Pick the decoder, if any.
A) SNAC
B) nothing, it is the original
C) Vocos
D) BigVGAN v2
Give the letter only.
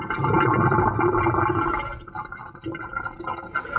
B